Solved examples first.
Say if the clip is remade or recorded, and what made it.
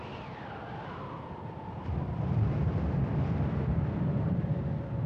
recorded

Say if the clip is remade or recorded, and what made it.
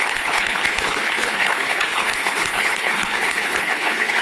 remade, codec, HILCodec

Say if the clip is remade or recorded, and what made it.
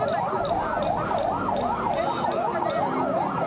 recorded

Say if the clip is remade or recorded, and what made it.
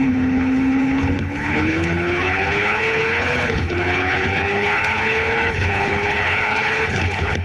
remade, codec, HILCodec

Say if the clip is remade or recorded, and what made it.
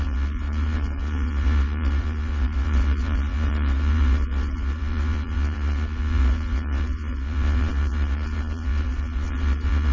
remade, vocoder, Vocos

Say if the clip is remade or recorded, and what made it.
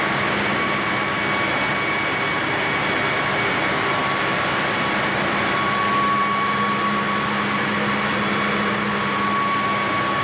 recorded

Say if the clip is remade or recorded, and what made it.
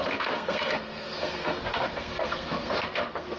remade, codec, SNAC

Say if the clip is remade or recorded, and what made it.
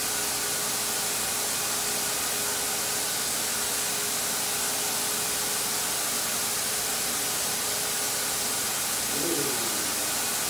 recorded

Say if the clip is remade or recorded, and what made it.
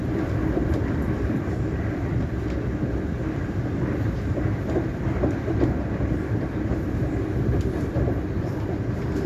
remade, vocoder, BigVGAN v2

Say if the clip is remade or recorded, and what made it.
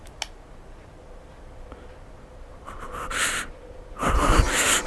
recorded